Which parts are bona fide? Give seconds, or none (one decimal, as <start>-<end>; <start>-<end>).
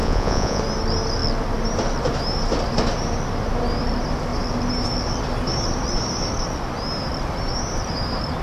0.6-8.4